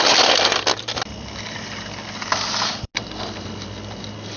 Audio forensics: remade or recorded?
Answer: recorded